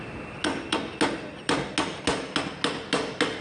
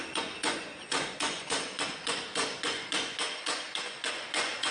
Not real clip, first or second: second